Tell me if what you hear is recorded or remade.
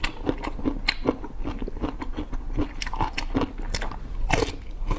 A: recorded